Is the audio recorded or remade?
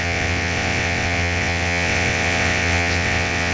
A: remade